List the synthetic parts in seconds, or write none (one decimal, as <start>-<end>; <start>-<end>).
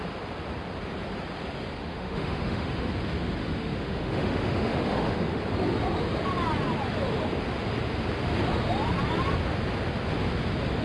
1.8-2.9; 3.4-5.4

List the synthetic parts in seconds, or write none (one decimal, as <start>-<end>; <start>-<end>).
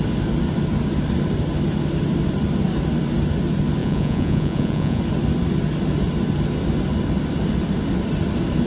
3.8-5.0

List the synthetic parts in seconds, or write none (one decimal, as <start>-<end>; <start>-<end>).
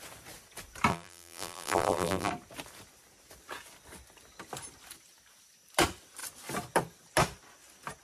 0.9-2.3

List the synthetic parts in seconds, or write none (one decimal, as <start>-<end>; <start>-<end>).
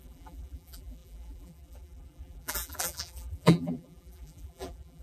0.0-5.0